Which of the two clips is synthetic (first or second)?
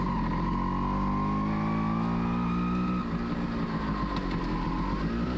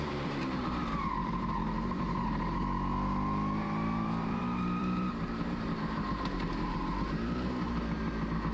second